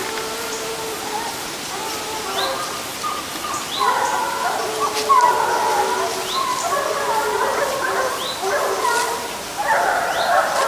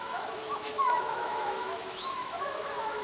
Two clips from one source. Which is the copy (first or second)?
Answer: second